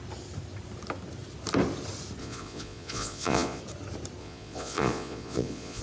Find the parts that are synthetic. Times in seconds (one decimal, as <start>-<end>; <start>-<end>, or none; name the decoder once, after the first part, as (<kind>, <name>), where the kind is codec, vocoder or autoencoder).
2.2-3.6 (vocoder, Vocos); 4.2-5.8